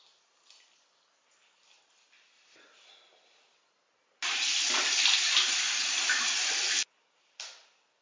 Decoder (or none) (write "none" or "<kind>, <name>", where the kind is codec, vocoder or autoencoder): none